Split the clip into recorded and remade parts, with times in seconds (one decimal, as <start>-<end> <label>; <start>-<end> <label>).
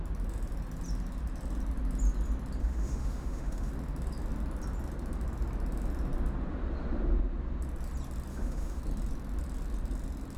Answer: 0.0-2.6 recorded; 2.6-3.7 remade; 3.7-8.3 recorded; 8.3-8.8 remade; 8.8-10.4 recorded